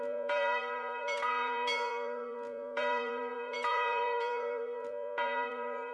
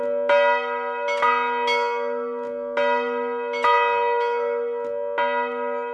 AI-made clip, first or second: first